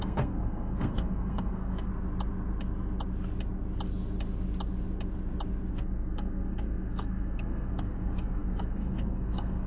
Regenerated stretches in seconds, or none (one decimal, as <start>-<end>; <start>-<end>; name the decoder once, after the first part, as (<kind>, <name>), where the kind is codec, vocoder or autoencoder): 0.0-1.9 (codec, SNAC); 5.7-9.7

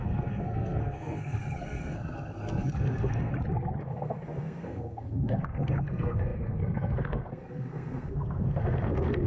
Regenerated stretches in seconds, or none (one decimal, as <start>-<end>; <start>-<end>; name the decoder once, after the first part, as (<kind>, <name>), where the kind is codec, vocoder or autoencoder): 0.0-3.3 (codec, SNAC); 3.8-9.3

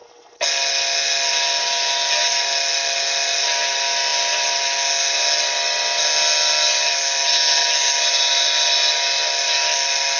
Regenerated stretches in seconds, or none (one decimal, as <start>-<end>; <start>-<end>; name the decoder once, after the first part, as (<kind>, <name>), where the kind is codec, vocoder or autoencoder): none

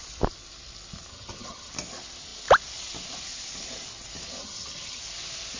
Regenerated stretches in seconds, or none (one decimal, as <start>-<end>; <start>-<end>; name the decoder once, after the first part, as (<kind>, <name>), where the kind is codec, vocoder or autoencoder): 1.1-1.7 (vocoder, HiFi-GAN); 4.4-5.0

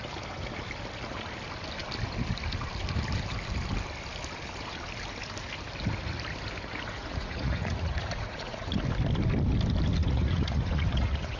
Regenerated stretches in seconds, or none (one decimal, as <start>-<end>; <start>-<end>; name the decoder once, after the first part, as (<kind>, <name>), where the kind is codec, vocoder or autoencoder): 7.0-8.8 (vocoder, Vocos); 10.0-11.4

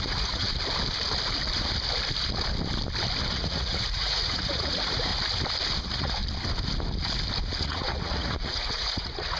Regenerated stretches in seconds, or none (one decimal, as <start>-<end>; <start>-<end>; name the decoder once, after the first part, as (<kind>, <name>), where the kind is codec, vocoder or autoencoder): 0.0-0.5 (vocoder, Vocos); 3.3-5.1; 5.8-6.2; 7.6-9.4

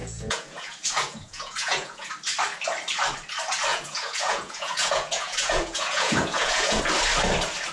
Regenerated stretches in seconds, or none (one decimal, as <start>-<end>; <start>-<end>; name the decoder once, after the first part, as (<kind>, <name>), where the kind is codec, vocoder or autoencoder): 0.0-2.1 (vocoder, Vocos); 3.7-6.8